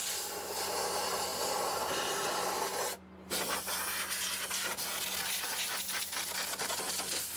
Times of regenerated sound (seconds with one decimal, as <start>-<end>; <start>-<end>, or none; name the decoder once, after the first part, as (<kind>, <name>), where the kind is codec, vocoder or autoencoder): none